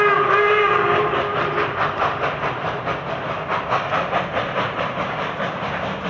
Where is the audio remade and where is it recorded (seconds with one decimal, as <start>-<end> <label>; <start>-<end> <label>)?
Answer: 0.0-1.3 remade; 1.3-5.0 recorded; 5.0-6.1 remade